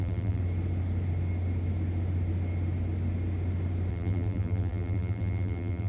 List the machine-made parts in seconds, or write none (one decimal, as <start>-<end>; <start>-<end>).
0.0-0.4; 3.9-5.9